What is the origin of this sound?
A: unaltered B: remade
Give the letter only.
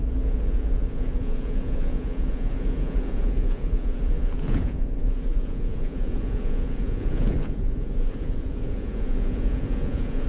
B